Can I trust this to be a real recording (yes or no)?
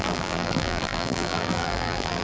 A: no